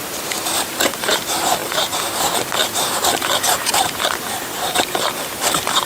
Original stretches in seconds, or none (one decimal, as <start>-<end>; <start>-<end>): none